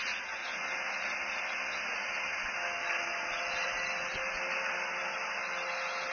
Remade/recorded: recorded